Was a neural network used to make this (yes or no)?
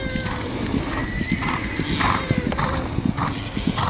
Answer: no